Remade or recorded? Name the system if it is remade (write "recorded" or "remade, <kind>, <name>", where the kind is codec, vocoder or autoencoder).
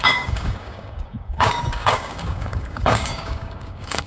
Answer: remade, codec, DAC